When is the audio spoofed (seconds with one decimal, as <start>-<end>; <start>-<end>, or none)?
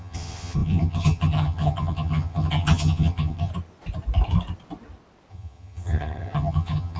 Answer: 0.0-3.5; 5.3-7.0